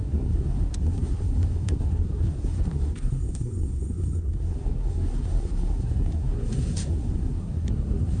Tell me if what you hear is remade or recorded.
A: remade